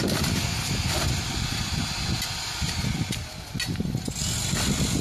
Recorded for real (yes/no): yes